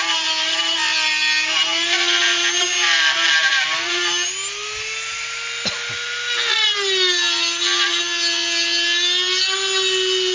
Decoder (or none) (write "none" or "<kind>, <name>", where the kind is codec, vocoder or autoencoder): none